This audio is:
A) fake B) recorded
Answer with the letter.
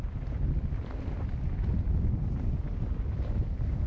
B